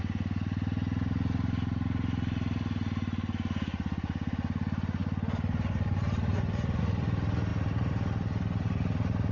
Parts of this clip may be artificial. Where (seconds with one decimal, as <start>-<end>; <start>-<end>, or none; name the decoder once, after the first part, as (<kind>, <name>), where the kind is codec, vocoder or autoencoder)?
none